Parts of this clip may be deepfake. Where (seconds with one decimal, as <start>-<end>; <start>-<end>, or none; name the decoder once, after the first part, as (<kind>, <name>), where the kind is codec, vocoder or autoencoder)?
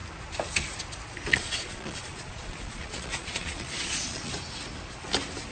1.3-4.3 (vocoder, Vocos)